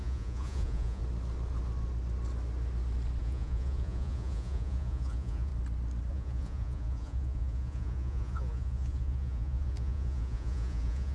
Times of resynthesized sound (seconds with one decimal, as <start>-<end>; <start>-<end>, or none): 0.0-1.0; 3.2-5.5; 6.1-11.1